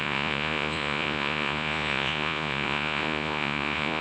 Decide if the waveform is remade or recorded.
remade